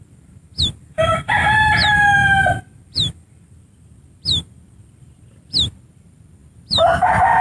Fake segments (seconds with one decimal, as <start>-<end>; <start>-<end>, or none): none